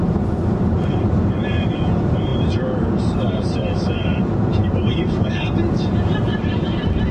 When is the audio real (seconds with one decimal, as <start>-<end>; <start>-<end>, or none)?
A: none